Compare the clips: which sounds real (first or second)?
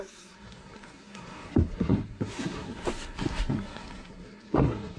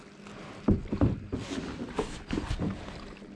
second